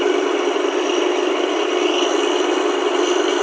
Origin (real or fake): real